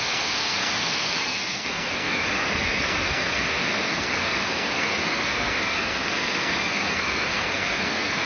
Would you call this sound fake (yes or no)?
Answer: yes